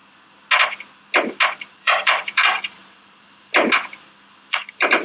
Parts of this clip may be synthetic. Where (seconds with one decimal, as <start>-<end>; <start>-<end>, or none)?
1.7-3.5; 4.5-5.0